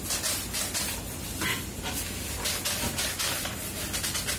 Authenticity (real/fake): real